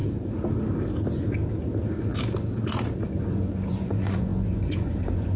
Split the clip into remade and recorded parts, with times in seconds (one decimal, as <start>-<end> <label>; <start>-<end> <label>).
0.0-3.2 recorded; 3.2-5.4 remade